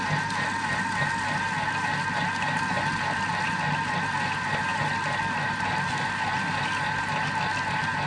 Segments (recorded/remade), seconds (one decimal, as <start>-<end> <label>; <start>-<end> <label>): 0.0-8.1 recorded